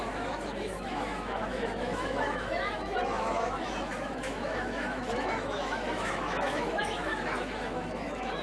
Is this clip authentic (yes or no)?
no